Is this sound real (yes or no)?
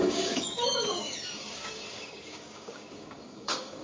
no